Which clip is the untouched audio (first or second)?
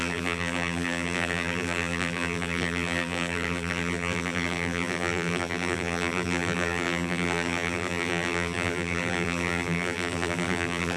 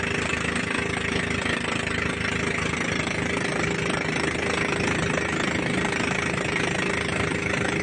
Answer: second